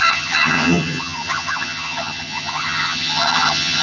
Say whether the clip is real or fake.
fake